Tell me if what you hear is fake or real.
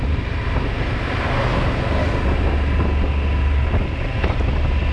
real